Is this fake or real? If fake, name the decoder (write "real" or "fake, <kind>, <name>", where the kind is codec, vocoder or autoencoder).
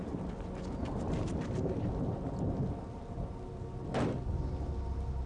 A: real